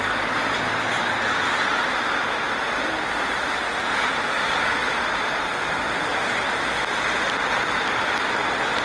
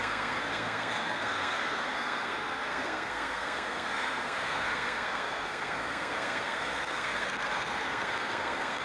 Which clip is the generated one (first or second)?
second